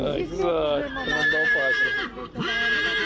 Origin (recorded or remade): recorded